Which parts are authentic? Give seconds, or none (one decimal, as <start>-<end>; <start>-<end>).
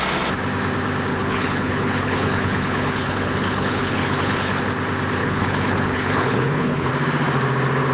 0.0-1.1; 4.6-5.2; 6.9-7.9